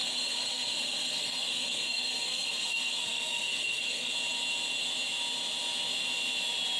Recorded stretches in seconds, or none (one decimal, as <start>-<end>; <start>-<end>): 4.1-6.8